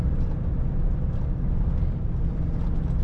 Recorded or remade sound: recorded